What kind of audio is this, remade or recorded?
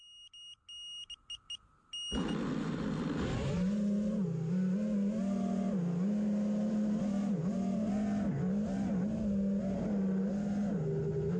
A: recorded